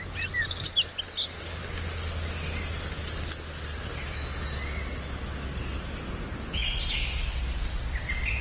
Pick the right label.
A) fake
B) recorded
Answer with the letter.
B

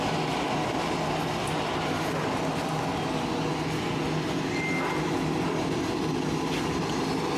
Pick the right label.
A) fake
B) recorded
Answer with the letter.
B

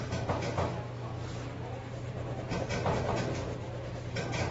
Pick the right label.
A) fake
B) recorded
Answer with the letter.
B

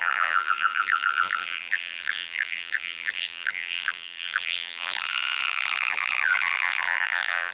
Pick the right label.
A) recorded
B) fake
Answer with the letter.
B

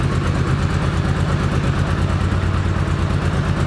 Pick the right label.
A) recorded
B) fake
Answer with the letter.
A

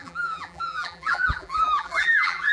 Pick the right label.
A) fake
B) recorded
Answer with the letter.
A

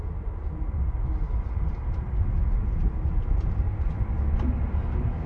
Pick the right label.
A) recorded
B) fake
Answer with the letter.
A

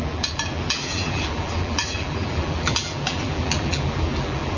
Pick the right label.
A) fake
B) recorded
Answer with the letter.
A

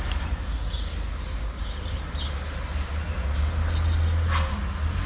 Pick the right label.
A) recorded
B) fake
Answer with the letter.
A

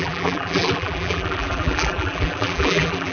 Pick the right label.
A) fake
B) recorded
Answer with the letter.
A